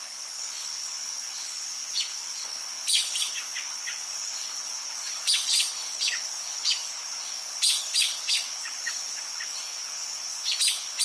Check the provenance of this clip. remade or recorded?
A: remade